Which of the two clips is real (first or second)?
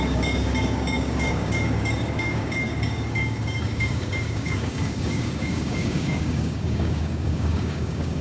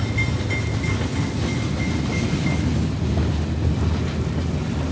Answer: second